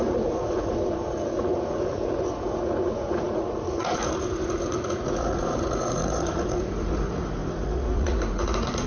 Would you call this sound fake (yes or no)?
yes